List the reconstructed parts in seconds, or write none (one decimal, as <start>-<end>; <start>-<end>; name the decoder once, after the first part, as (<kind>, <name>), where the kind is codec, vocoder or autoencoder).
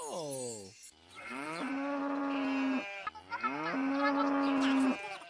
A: 1.1-1.7 (vocoder, WaveNeXt)